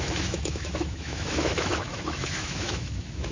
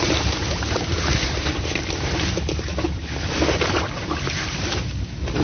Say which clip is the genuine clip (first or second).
second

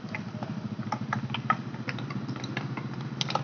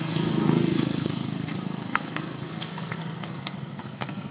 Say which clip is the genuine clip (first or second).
first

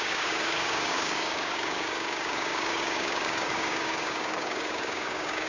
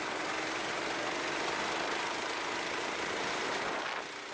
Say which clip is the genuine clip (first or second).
second